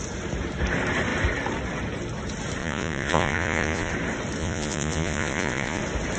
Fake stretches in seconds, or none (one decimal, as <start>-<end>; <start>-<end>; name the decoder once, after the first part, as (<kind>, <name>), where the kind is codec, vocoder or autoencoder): 2.6-3.9 (vocoder, Vocos); 4.4-5.8